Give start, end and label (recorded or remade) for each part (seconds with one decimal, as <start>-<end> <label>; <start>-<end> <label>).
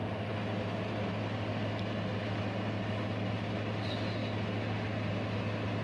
0.0-3.3 remade; 3.3-5.8 recorded